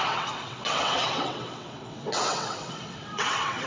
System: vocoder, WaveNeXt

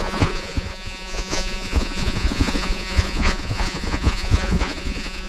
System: vocoder, Vocos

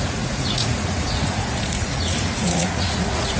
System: vocoder, Vocos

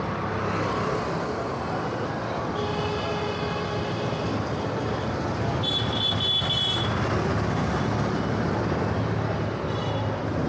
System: none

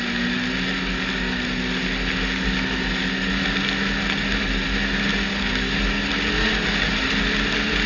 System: none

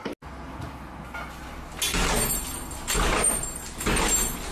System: none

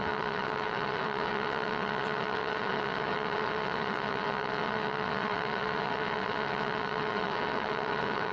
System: vocoder, WaveNeXt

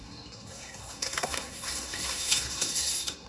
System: codec, SNAC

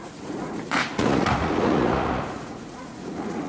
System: vocoder, Vocos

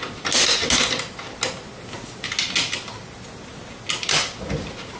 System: none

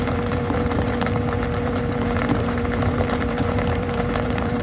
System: vocoder, BigVGAN v2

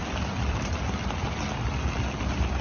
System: none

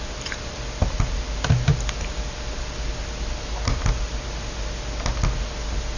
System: none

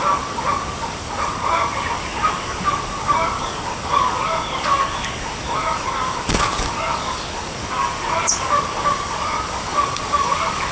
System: codec, DAC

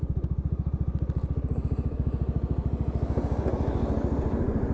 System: none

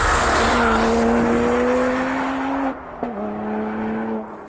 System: none